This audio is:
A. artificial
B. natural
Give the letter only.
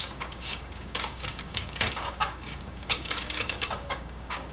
A